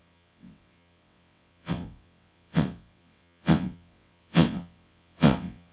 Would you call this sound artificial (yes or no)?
yes